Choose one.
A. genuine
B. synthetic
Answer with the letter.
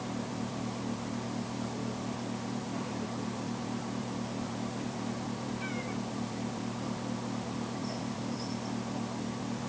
B